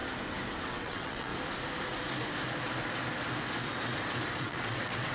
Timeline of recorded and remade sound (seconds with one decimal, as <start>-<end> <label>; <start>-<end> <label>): 0.0-0.7 recorded; 0.7-1.3 remade; 1.3-4.4 recorded; 4.4-5.1 remade